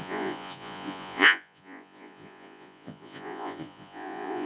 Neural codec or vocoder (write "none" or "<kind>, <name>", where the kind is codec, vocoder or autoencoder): vocoder, Vocos